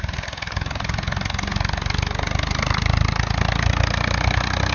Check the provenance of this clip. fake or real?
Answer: real